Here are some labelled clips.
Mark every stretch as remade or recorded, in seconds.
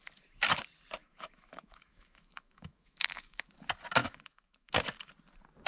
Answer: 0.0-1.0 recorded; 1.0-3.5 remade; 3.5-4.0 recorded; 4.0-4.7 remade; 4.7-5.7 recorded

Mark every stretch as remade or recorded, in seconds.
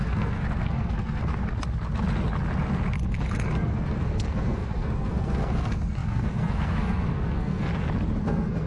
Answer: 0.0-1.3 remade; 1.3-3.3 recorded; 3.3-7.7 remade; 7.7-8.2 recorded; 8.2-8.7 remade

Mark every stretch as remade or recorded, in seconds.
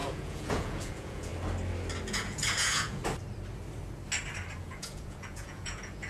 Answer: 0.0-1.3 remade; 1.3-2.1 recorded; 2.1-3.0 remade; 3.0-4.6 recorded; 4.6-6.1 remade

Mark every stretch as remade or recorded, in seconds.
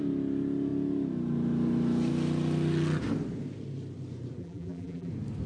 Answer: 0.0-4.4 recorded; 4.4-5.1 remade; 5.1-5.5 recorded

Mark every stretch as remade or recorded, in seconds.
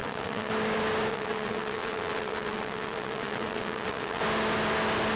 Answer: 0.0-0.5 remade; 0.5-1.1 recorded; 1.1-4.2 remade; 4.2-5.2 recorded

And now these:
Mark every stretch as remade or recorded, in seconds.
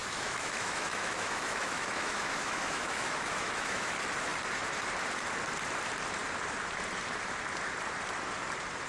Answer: 0.0-3.9 remade; 3.9-8.9 recorded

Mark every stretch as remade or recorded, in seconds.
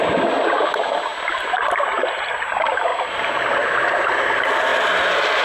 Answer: 0.0-5.4 recorded